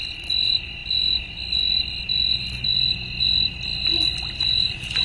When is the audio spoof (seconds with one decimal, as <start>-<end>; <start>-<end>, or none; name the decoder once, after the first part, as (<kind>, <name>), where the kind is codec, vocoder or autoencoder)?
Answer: none